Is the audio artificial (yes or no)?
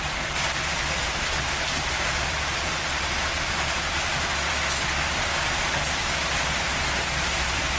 yes